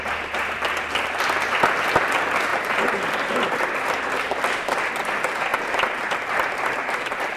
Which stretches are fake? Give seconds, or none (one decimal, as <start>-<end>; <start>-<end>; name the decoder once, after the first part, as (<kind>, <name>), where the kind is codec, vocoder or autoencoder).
none